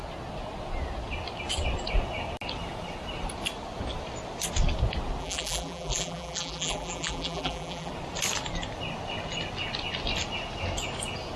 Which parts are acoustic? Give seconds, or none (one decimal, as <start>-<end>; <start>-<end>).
0.0-5.2; 7.9-11.4